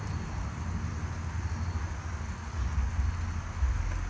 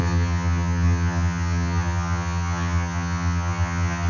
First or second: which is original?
first